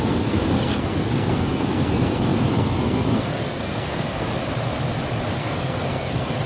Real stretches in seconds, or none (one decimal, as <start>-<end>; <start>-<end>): 4.3-5.4